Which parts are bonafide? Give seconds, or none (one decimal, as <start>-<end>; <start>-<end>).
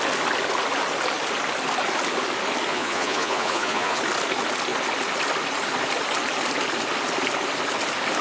0.0-2.7; 4.0-8.2